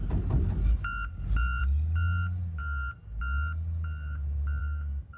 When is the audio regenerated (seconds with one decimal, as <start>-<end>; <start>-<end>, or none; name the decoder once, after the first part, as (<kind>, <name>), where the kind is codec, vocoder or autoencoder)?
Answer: 4.6-5.2 (codec, DAC)